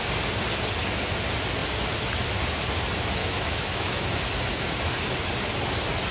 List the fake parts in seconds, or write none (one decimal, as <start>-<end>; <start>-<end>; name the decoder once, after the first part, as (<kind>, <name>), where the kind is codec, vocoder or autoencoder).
3.2-4.2 (autoencoder, DAC-VAE)